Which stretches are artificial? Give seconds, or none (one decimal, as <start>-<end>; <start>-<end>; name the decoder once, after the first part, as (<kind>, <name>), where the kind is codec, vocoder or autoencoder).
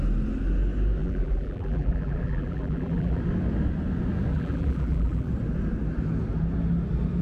1.0-3.2 (vocoder, BigVGAN v2); 4.3-5.3